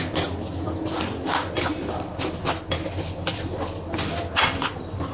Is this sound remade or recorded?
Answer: recorded